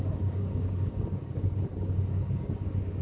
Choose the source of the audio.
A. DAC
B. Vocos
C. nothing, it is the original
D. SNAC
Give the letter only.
A